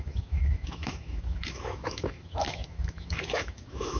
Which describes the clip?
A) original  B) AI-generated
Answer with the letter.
B